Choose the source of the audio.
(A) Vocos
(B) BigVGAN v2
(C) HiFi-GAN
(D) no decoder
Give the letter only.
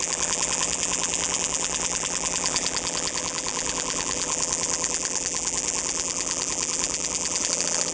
B